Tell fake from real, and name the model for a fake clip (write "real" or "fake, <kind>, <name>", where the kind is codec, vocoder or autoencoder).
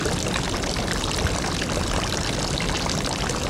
fake, vocoder, BigVGAN v2